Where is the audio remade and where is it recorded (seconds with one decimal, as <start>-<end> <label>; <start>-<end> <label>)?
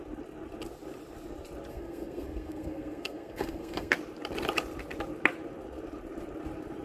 0.0-1.7 recorded; 1.7-3.9 remade; 3.9-6.8 recorded